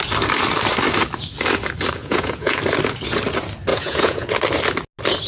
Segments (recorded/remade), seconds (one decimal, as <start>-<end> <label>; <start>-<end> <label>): 0.0-2.0 recorded; 2.0-2.6 remade; 2.6-3.7 recorded; 3.7-4.3 remade; 4.3-5.3 recorded